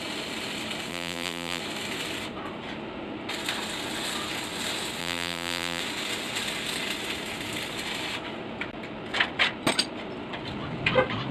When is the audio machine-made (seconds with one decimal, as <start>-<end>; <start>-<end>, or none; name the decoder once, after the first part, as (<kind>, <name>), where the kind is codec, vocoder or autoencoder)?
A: 0.9-1.6 (vocoder, BigVGAN v2); 5.0-5.8